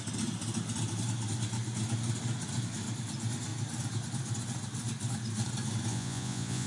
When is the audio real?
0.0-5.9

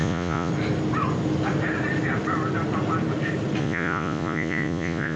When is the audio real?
0.5-3.6

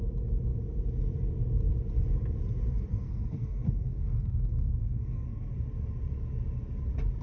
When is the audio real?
0.0-2.9; 5.5-7.2

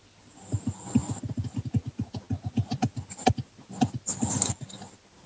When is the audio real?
0.0-5.3

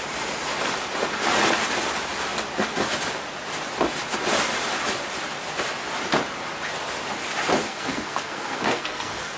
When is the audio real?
0.0-7.6

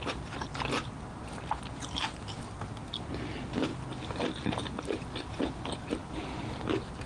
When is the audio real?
0.0-7.1